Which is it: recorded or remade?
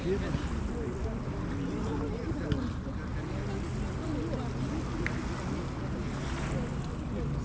recorded